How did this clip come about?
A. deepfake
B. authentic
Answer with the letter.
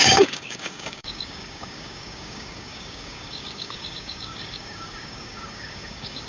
A